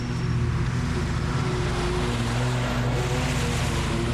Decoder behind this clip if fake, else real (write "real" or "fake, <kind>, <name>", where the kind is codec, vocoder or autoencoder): real